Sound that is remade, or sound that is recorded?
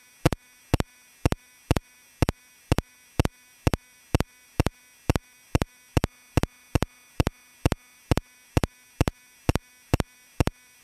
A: recorded